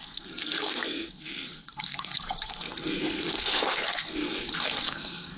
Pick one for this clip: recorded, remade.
remade